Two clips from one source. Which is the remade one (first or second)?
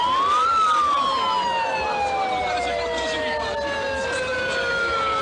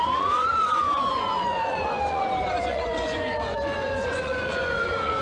second